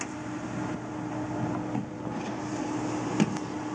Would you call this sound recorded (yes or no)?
yes